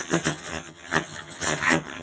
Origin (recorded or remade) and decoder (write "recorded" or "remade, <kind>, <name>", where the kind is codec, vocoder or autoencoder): remade, vocoder, HiFi-GAN